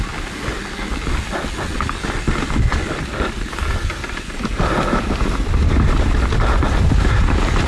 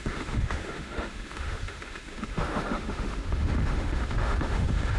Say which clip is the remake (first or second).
second